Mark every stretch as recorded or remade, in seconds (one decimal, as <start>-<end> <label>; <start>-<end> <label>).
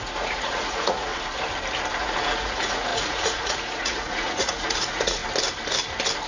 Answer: 0.0-1.1 remade; 1.1-2.0 recorded; 2.0-5.2 remade; 5.2-6.3 recorded